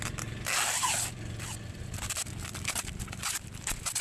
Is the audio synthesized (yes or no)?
yes